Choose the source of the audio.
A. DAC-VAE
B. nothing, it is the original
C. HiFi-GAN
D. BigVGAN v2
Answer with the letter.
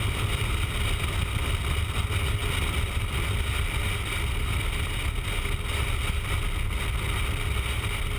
B